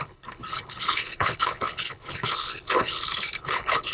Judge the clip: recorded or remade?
remade